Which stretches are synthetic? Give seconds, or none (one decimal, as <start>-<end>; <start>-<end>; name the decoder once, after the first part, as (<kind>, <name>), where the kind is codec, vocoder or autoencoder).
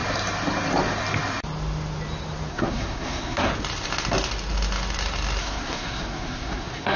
2.5-3.5 (codec, SNAC); 5.4-7.0